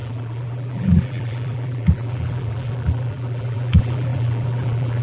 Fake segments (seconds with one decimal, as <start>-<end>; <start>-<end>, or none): 0.0-5.0

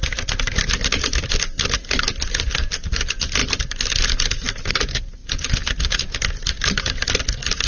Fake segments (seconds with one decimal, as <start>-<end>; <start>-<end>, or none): none

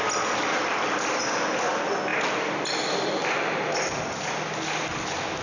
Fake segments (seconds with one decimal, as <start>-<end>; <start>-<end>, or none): none

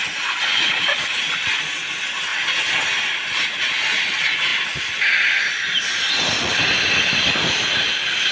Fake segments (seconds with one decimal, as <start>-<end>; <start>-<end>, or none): none

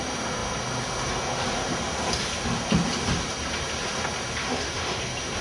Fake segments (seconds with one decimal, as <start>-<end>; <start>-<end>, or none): 4.4-5.0